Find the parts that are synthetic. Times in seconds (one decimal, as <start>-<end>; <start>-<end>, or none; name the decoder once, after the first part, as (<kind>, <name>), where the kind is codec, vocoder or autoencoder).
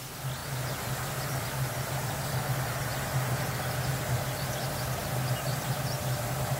none